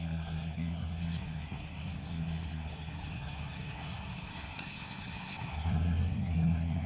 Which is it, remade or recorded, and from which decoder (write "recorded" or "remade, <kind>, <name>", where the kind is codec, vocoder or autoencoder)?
remade, codec, SNAC